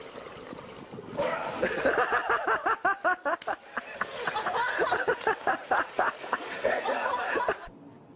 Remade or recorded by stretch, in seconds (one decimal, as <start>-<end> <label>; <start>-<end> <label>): 0.0-4.1 recorded; 4.1-7.1 remade; 7.1-8.2 recorded